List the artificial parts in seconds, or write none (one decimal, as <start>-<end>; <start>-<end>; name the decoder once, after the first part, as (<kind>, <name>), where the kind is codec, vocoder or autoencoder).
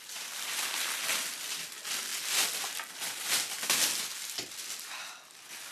none